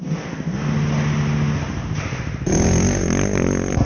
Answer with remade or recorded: recorded